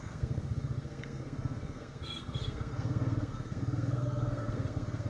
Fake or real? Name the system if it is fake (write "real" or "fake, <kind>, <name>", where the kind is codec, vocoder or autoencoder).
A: fake, codec, SNAC